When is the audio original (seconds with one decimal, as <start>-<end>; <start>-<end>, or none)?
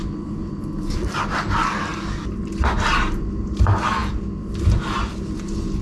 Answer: 0.0-5.8